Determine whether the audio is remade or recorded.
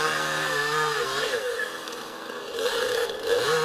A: remade